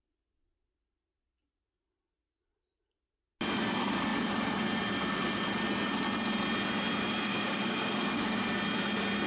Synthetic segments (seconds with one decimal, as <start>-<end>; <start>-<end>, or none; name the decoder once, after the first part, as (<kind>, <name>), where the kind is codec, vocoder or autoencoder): 7.3-8.4 (codec, DAC)